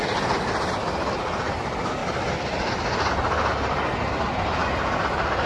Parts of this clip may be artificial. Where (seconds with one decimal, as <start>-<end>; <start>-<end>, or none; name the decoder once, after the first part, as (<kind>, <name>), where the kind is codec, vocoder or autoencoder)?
none

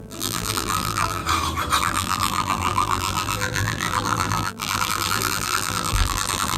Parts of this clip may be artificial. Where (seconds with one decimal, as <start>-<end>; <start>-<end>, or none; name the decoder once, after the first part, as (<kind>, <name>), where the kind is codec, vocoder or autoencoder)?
0.0-1.2 (vocoder, BigVGAN v2); 1.8-6.6

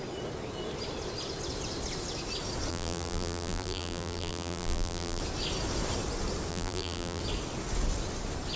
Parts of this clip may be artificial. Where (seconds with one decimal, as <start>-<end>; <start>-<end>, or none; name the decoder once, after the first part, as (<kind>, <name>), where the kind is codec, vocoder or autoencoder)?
2.7-5.2 (vocoder, BigVGAN v2); 6.5-7.2

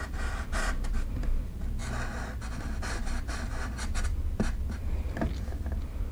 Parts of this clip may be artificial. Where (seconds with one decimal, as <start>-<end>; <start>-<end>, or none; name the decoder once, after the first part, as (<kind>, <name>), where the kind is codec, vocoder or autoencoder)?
0.0-1.8 (vocoder, BigVGAN v2); 2.8-6.1

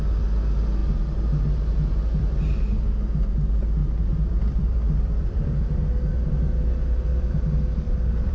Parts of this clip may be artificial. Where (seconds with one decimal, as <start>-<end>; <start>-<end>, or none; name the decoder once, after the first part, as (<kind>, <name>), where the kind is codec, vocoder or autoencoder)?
3.8-5.5 (vocoder, BigVGAN v2); 7.1-8.3

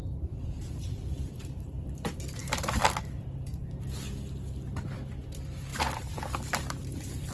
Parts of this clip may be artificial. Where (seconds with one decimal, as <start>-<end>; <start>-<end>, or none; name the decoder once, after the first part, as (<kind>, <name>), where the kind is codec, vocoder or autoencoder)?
0.0-2.4 (vocoder, BigVGAN v2); 3.0-3.5; 4.8-7.3